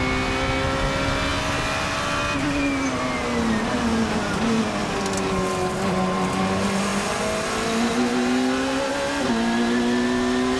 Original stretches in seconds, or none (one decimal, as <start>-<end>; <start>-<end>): 0.0-10.6